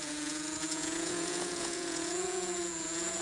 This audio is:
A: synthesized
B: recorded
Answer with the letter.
A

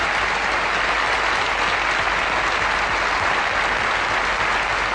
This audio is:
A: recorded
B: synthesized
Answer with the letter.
A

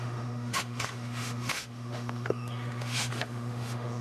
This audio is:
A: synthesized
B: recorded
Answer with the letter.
A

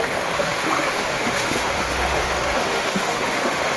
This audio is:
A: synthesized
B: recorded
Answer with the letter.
A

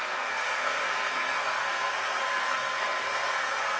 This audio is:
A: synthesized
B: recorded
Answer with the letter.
A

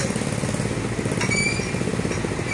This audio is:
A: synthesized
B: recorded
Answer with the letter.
B